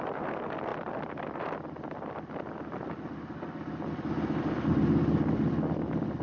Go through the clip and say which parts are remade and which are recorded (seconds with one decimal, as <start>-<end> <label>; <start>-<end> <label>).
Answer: 0.0-6.2 recorded